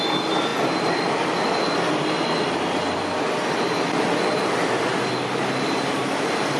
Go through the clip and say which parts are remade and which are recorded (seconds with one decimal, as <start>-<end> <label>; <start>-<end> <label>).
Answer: 0.0-6.6 recorded